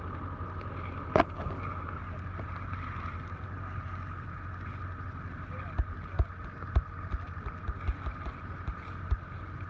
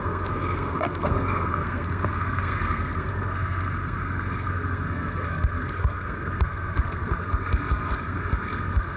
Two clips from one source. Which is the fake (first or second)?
second